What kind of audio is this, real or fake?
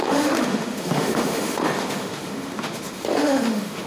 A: fake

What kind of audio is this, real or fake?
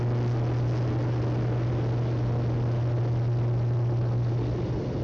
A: real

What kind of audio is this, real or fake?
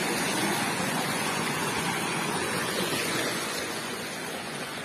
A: fake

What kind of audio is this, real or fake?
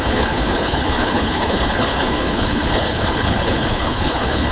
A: fake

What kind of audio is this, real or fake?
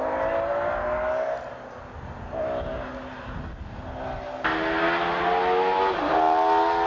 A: real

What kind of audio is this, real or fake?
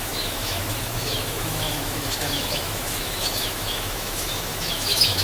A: fake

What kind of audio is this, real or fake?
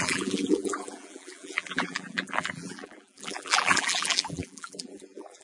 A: fake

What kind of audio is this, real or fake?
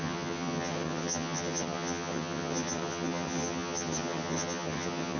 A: fake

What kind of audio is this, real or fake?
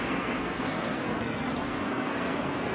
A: fake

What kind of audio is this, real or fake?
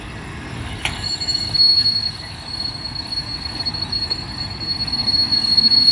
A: fake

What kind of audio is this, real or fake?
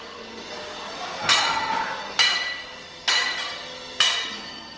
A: real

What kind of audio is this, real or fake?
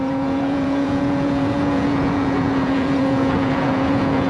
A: fake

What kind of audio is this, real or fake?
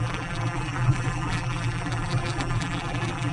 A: fake